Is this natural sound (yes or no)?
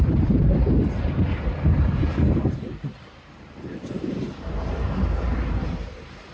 no